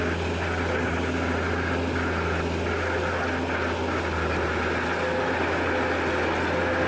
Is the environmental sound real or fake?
real